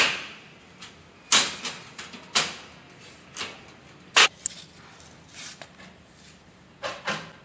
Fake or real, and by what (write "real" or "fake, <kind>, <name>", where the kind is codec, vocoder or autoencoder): real